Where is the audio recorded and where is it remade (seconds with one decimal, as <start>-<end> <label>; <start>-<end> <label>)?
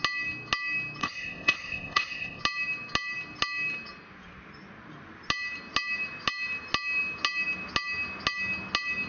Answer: 0.0-1.0 recorded; 1.0-2.4 remade; 2.4-9.1 recorded